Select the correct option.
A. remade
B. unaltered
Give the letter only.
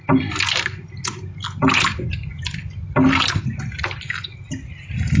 B